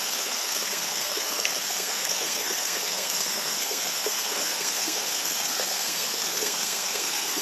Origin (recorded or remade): remade